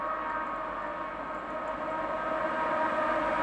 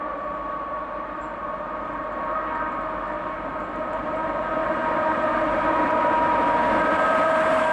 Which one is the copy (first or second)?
second